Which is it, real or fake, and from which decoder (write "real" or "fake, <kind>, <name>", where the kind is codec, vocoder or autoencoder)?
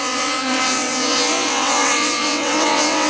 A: fake, vocoder, WaveNeXt